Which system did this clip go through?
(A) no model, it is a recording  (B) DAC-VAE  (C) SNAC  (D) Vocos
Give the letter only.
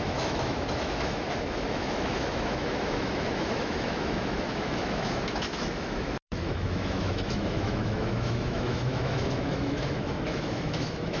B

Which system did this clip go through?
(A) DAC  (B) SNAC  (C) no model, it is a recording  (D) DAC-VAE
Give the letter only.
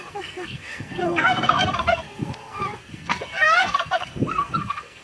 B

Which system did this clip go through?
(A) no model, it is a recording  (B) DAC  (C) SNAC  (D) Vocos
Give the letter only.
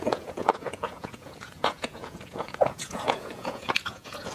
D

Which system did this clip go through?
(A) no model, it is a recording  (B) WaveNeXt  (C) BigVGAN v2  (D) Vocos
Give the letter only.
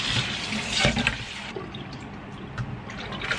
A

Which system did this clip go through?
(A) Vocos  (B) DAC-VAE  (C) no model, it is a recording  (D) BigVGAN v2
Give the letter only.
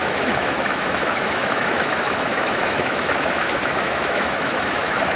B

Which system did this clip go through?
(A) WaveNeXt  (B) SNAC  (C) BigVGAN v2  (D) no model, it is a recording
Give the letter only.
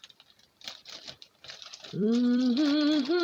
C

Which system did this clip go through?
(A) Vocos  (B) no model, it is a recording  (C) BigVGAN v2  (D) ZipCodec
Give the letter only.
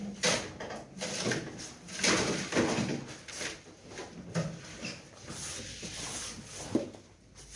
B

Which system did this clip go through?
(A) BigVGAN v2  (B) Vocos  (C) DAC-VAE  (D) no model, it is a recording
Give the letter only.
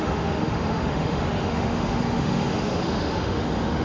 C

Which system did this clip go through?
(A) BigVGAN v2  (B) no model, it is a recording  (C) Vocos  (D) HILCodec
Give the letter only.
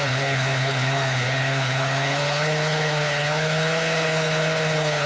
D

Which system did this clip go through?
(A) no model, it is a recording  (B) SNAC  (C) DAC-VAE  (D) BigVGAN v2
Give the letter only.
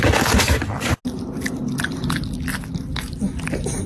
A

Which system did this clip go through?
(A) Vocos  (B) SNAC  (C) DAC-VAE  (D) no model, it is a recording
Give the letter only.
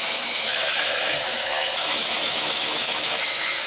C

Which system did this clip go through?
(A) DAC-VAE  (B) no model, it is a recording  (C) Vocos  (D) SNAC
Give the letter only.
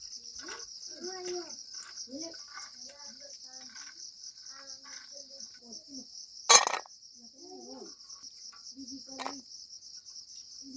B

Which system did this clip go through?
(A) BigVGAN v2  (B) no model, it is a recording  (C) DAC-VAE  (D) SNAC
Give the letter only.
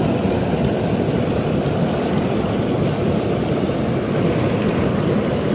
B